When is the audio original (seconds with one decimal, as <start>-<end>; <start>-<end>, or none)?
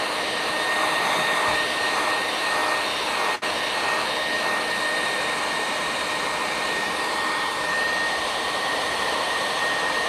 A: 2.6-4.8